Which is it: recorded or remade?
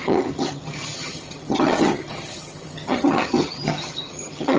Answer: remade